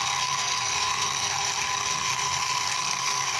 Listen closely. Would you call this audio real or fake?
fake